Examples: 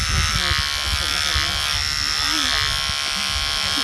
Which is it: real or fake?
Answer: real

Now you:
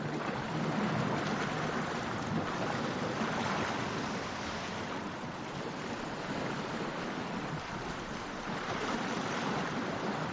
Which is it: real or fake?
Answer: real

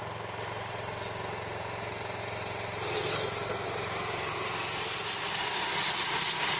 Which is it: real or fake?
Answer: real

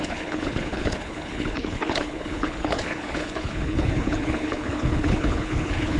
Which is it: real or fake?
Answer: fake